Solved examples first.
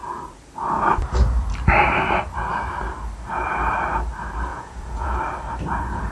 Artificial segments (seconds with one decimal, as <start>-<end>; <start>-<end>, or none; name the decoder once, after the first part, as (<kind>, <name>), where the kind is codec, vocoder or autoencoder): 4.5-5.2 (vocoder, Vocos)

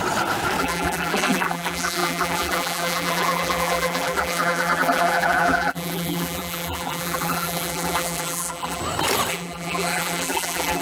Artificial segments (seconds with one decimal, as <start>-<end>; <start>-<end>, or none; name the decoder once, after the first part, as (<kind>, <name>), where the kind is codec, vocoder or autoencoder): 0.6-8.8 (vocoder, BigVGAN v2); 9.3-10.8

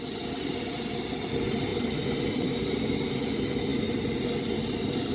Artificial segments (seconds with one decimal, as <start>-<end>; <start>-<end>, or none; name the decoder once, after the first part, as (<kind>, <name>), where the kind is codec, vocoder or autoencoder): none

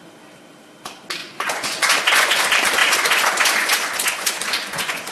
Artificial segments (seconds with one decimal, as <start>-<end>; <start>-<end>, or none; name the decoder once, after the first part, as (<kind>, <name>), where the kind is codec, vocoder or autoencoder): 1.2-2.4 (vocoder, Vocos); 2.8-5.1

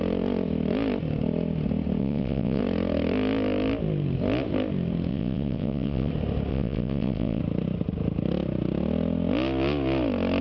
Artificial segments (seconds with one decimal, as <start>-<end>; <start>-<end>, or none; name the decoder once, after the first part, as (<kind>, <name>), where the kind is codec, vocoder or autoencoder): 2.0-2.6 (vocoder, WaveNeXt); 5.1-6.1; 6.5-7.4